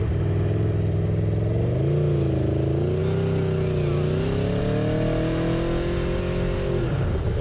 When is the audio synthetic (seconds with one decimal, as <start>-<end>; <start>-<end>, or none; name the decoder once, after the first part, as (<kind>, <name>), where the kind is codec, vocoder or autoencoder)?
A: none